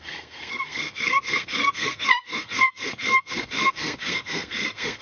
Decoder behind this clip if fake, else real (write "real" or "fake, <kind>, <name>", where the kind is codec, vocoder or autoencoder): fake, codec, SNAC